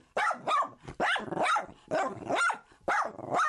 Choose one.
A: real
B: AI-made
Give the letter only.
A